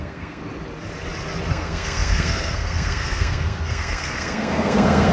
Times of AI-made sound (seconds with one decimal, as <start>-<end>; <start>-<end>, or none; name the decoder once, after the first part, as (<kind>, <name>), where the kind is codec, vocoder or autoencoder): 0.0-0.4 (codec, SNAC); 1.5-5.1

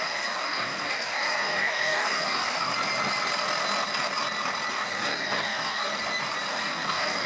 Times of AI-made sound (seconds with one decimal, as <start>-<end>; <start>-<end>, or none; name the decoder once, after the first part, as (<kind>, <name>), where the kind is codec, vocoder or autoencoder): 0.0-2.7 (codec, DAC); 4.7-5.9; 6.5-7.3

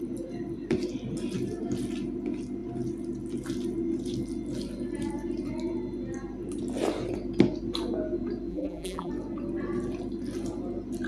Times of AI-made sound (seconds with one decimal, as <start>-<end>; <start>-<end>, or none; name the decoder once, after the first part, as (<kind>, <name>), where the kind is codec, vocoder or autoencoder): 8.5-9.1 (vocoder, BigVGAN v2)

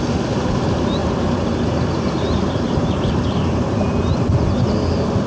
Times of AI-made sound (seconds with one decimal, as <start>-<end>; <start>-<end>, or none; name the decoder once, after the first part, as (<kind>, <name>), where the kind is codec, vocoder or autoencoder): 1.0-4.2 (vocoder, BigVGAN v2)